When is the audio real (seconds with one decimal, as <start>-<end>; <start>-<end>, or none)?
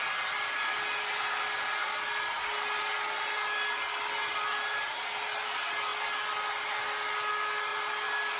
0.0-8.4